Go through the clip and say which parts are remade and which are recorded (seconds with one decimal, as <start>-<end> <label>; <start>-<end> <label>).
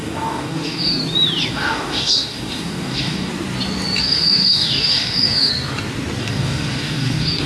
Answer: 0.0-1.0 remade; 1.0-1.5 recorded; 1.5-3.3 remade; 3.3-4.0 recorded; 4.0-5.5 remade; 5.5-6.2 recorded; 6.2-7.5 remade